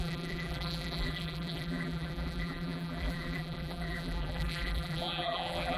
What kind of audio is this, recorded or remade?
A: remade